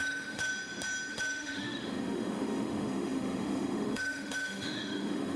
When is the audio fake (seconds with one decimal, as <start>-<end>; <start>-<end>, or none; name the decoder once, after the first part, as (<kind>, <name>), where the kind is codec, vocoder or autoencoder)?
0.0-0.5 (autoencoder, DAC-VAE); 1.1-5.4